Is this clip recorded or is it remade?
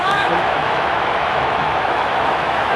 remade